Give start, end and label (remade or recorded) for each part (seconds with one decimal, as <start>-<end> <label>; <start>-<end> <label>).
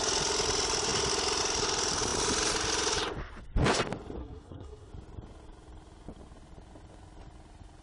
0.0-4.2 recorded; 4.2-4.9 remade; 4.9-7.8 recorded